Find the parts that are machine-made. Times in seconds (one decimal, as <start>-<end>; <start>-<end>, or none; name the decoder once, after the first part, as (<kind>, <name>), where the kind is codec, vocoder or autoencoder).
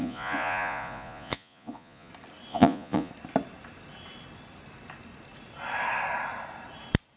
0.0-2.1 (vocoder, Vocos); 2.5-3.1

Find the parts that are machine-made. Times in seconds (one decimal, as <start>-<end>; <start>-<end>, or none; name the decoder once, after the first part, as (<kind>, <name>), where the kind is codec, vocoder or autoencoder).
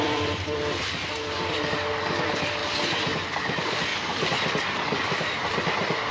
0.0-2.6 (vocoder, BigVGAN v2); 3.2-3.9; 5.0-6.1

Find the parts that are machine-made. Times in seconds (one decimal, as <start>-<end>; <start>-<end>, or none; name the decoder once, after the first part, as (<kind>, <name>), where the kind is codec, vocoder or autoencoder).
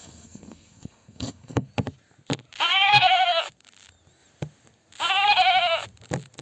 0.0-1.7 (codec, SNAC); 2.7-3.4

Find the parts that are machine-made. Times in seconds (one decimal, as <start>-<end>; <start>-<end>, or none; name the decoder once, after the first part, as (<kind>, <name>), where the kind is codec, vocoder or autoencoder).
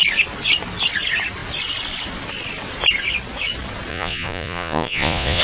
3.9-5.4 (vocoder, Vocos)